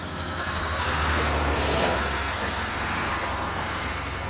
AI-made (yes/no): yes